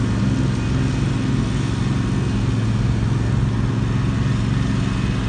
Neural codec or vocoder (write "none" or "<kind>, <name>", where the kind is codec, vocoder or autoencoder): none